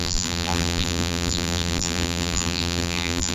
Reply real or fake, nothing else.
fake